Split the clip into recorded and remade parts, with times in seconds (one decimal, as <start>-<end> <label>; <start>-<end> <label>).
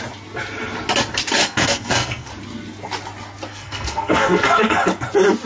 0.0-1.4 recorded; 1.4-2.3 remade; 2.3-3.5 recorded; 3.5-4.8 remade; 4.8-5.5 recorded